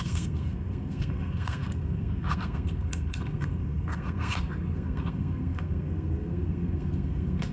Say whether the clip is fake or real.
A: fake